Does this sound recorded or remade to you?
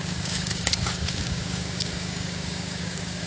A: remade